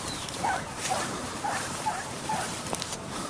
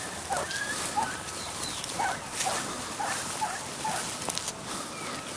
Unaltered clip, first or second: second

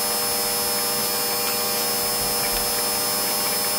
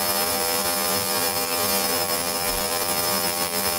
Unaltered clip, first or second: first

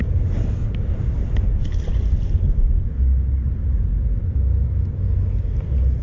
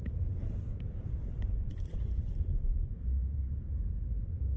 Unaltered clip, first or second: first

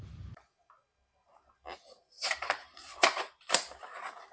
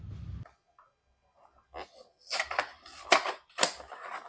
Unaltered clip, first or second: second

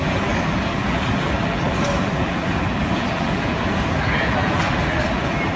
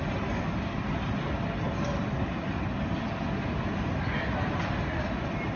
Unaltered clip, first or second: second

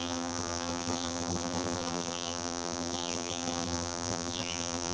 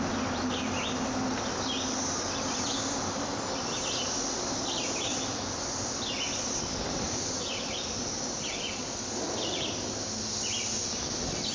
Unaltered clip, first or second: second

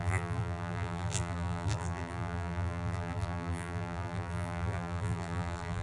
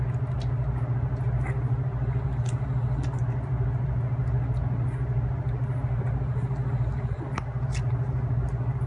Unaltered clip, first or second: second